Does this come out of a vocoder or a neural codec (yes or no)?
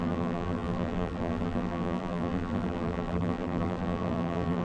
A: yes